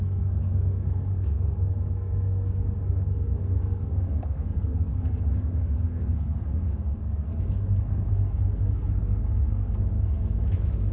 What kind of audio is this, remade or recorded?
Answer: remade